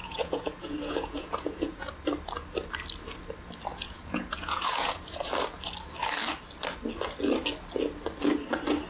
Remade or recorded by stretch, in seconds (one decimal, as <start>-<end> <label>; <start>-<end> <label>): 0.0-1.9 remade; 1.9-3.7 recorded; 3.7-5.3 remade; 5.3-8.9 recorded